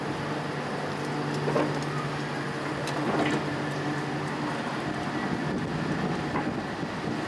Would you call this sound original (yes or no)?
yes